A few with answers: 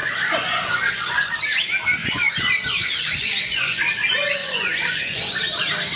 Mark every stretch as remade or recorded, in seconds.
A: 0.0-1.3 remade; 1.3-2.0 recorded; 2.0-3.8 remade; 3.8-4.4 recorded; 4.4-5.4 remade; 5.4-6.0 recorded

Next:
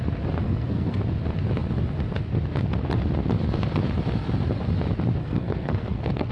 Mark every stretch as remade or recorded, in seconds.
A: 0.0-0.4 recorded; 0.4-1.0 remade; 1.0-5.2 recorded; 5.2-6.3 remade

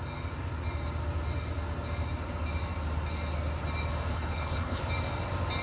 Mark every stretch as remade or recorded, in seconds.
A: 0.0-4.1 recorded; 4.1-4.8 remade; 4.8-5.6 recorded

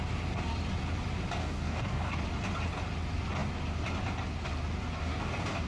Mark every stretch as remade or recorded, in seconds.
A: 0.0-1.4 recorded; 1.4-2.2 remade; 2.2-5.0 recorded; 5.0-5.7 remade

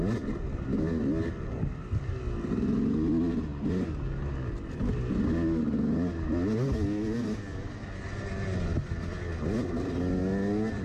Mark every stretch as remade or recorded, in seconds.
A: 0.0-10.8 recorded

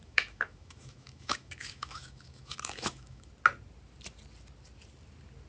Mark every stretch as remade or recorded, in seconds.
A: 0.0-3.3 remade; 3.3-5.5 recorded

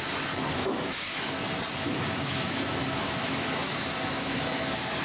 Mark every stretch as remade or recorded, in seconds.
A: 0.0-0.6 recorded; 0.6-1.3 remade; 1.3-1.8 recorded; 1.8-5.0 remade

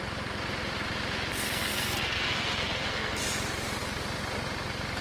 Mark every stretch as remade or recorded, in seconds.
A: 0.0-1.3 recorded; 1.3-3.2 remade; 3.2-5.0 recorded